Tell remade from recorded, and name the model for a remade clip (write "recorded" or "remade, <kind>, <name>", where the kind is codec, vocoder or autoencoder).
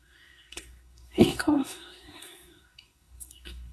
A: remade, codec, SNAC